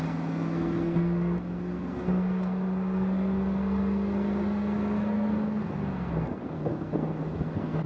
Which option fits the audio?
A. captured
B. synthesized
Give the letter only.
B